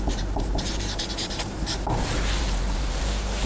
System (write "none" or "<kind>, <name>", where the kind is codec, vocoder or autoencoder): vocoder, BigVGAN v2